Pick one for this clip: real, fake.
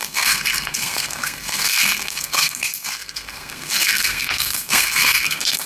fake